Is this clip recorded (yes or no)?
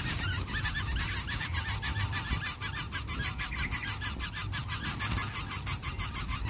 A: yes